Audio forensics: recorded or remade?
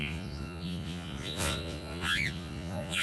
remade